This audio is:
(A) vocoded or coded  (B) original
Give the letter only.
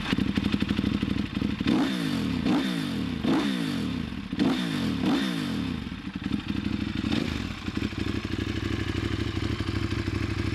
B